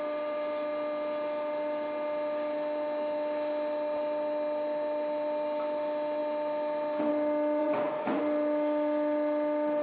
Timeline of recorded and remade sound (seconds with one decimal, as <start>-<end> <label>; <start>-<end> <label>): 0.0-7.6 recorded; 7.6-8.2 remade; 8.2-9.8 recorded